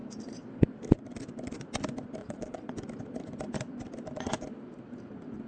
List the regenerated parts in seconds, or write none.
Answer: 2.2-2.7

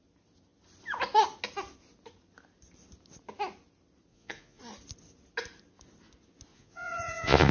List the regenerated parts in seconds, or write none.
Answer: 4.1-4.6; 6.5-7.5